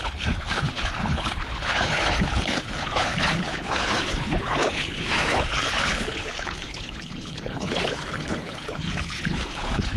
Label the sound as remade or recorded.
remade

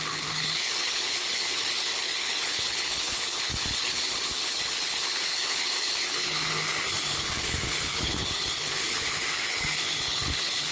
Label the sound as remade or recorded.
remade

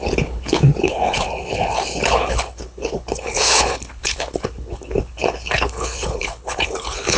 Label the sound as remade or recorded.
remade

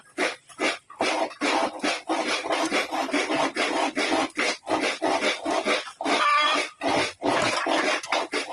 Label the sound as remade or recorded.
recorded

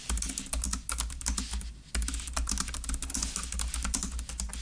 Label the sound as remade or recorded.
recorded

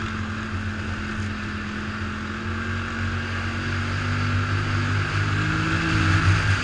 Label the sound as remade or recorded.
recorded